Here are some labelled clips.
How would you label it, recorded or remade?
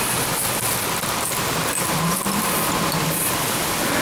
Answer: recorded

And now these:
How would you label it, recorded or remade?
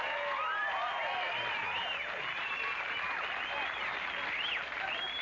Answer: recorded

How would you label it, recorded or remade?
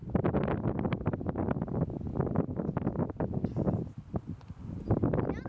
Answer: recorded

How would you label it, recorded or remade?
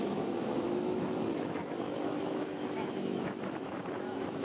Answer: remade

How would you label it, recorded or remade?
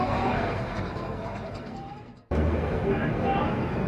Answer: remade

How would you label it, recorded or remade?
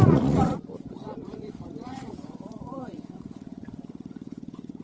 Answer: remade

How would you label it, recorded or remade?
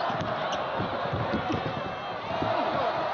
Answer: recorded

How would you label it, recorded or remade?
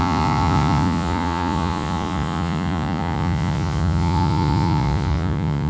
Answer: remade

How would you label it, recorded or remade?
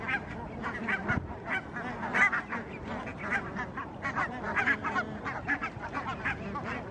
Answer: recorded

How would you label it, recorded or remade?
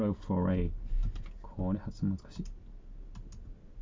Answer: recorded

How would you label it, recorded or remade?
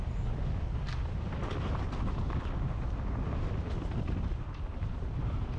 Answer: recorded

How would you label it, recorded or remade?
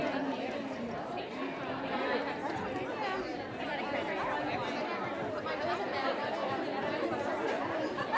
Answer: recorded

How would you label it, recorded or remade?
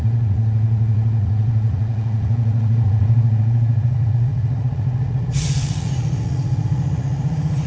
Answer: remade